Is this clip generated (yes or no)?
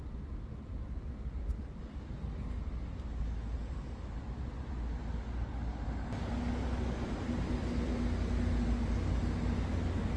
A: no